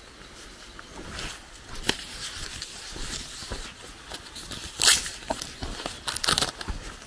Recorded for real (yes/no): yes